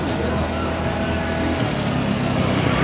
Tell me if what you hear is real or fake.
real